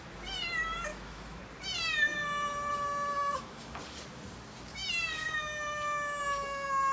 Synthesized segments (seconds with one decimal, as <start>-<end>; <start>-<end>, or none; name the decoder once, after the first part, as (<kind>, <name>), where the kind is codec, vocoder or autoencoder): 0.9-1.4 (autoencoder, DAC-VAE); 3.2-3.7